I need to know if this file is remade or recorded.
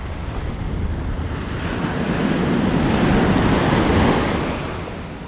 recorded